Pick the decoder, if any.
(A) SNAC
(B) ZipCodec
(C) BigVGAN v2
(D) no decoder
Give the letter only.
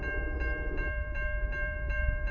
C